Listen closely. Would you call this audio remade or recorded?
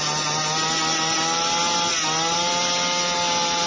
recorded